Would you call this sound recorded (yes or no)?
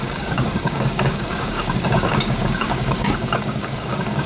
no